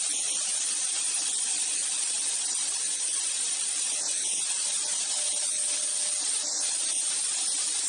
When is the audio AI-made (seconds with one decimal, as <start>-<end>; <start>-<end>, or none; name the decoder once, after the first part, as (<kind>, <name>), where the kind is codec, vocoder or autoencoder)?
none